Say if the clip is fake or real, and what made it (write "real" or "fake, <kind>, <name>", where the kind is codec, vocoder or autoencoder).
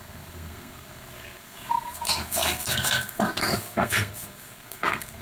fake, codec, SNAC